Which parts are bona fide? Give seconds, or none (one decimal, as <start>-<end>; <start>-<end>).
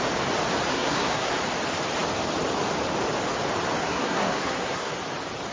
0.0-0.7; 1.3-3.8; 4.9-5.5